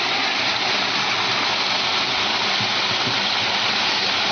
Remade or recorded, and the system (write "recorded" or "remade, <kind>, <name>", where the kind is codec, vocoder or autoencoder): recorded